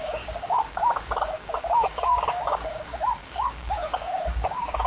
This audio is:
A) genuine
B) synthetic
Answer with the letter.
B